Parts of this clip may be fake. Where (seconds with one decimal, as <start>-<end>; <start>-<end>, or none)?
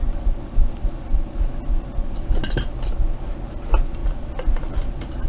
none